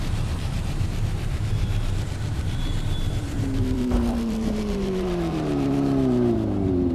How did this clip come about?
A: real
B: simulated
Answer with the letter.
B